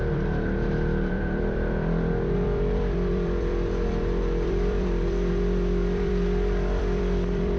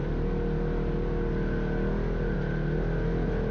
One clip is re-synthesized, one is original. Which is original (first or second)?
second